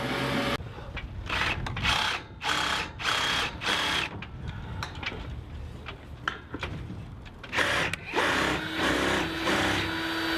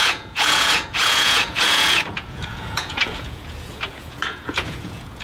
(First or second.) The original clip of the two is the first